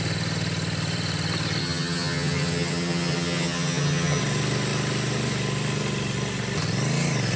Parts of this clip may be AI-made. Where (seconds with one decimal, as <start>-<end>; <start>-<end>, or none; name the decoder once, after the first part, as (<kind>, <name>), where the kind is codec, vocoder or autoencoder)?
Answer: 1.6-4.2 (vocoder, HiFi-GAN)